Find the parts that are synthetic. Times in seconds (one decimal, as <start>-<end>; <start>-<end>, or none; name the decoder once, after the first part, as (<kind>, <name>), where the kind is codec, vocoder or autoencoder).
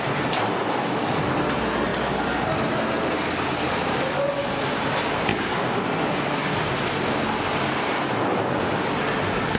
5.3-5.8 (codec, DAC)